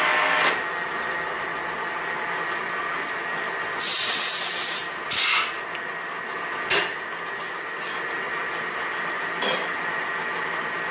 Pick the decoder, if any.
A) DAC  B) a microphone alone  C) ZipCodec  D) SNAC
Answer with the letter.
B